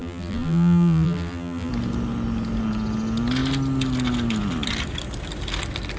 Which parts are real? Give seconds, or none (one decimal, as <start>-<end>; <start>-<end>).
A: 1.7-6.0